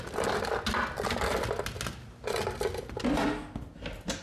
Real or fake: real